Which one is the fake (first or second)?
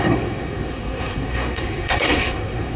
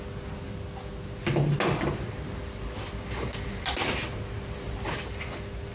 first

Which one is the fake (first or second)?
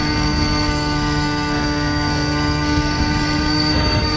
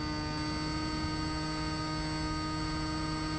first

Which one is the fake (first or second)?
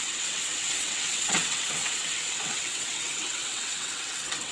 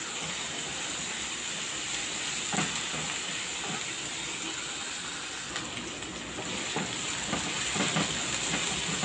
first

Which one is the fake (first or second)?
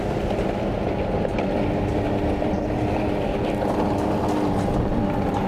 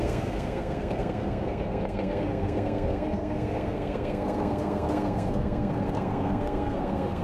second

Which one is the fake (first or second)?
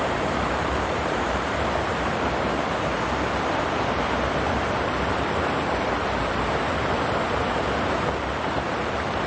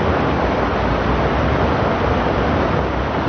first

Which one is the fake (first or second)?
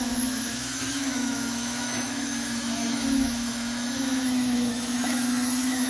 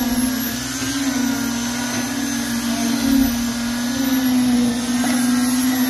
first